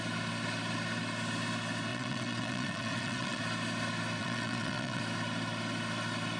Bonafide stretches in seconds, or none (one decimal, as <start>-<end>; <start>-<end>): 0.0-1.9; 3.4-4.2; 5.0-6.4